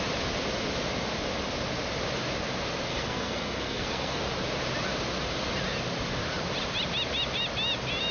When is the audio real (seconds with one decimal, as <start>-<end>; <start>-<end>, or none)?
0.0-2.9; 4.2-8.1